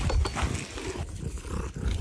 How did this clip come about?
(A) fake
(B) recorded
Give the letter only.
B